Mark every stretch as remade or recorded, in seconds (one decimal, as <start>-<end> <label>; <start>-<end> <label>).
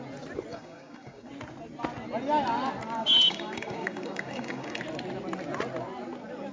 0.0-0.5 recorded; 0.5-1.3 remade; 1.3-3.0 recorded; 3.0-4.8 remade; 4.8-6.5 recorded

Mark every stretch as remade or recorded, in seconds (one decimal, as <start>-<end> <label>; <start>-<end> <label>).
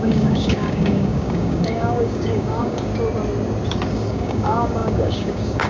0.0-2.9 remade; 2.9-3.9 recorded; 3.9-5.7 remade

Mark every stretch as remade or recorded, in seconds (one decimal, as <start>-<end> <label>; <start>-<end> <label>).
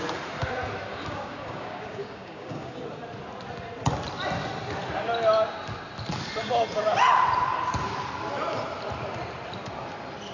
0.0-0.9 recorded; 0.9-2.8 remade; 2.8-10.3 recorded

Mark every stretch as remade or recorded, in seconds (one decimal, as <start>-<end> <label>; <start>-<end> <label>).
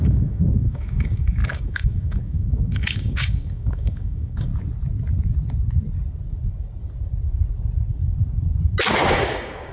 0.0-4.5 remade; 4.5-9.1 recorded; 9.1-9.7 remade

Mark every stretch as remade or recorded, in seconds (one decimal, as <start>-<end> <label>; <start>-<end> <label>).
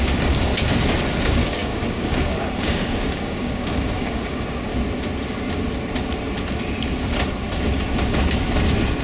0.0-0.5 remade; 0.5-1.2 recorded; 1.2-4.7 remade; 4.7-9.0 recorded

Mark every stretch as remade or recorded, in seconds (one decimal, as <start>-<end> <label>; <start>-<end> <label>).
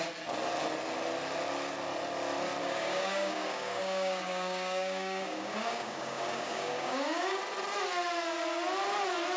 0.0-2.6 recorded; 2.6-7.4 remade; 7.4-9.4 recorded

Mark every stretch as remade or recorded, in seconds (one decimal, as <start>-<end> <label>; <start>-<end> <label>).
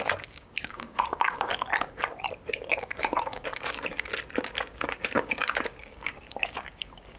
0.0-1.5 remade; 1.5-2.7 recorded; 2.7-4.1 remade; 4.1-4.7 recorded; 4.7-7.2 remade